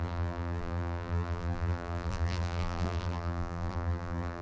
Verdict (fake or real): fake